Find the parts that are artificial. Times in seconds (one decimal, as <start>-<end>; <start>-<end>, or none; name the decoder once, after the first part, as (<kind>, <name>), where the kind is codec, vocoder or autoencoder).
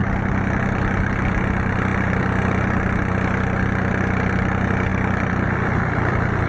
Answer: 4.9-6.5 (vocoder, BigVGAN v2)